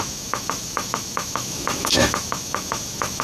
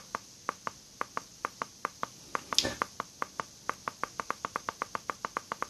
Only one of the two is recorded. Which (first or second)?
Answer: second